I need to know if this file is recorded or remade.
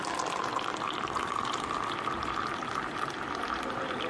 remade